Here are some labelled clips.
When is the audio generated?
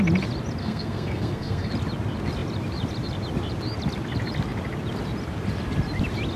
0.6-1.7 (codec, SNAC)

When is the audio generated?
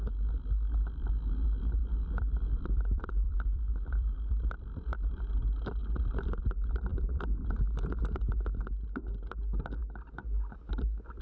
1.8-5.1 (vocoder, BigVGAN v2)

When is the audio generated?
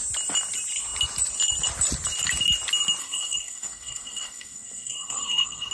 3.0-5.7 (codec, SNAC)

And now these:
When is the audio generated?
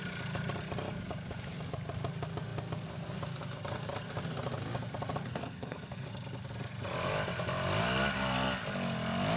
5.3-6.1 (codec, SNAC)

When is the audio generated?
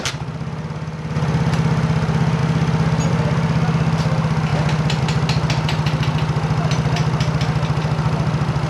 none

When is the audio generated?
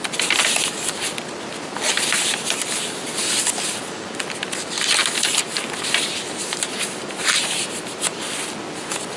5.0-8.2 (vocoder, BigVGAN v2)